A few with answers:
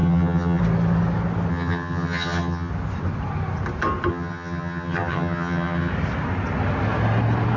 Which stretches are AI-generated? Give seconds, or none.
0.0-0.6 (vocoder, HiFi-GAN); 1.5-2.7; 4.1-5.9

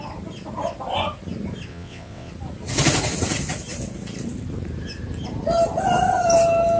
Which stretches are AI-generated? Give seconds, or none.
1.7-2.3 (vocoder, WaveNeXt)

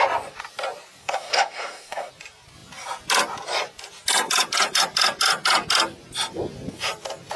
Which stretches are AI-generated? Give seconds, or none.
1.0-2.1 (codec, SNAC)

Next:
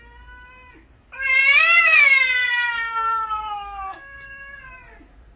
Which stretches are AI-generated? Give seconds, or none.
1.5-4.7 (codec, DAC)